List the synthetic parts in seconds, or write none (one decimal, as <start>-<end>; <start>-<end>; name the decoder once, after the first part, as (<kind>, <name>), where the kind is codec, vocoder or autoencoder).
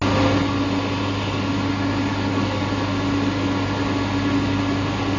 2.1-2.6 (codec, DAC)